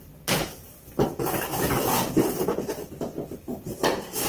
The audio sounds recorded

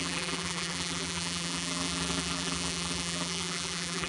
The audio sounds remade